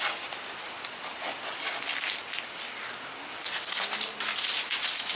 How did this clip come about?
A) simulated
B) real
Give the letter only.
B